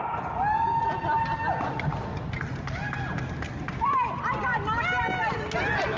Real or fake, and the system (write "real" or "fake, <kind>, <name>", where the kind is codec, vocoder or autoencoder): real